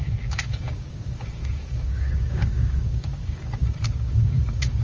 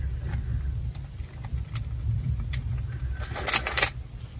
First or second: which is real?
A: second